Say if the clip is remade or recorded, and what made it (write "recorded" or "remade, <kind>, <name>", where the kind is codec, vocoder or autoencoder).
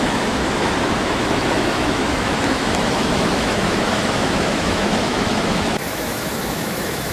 remade, autoencoder, DAC-VAE